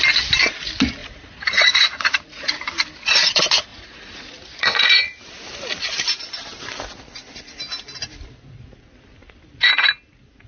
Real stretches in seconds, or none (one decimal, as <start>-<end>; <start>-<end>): 0.0-1.0; 2.6-3.7; 5.2-10.5